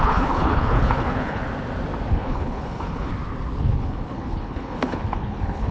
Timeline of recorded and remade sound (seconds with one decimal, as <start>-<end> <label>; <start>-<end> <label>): 0.0-1.4 remade; 1.4-2.1 recorded; 2.1-3.1 remade; 3.1-3.6 recorded; 3.6-5.7 remade